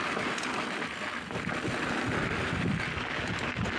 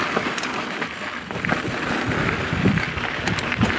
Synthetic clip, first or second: second